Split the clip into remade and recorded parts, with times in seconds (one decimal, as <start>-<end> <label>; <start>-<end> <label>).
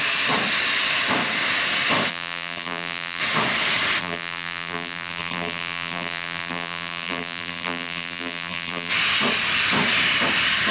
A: 0.0-2.1 recorded; 2.1-3.2 remade; 3.2-4.0 recorded; 4.0-8.9 remade; 8.9-10.7 recorded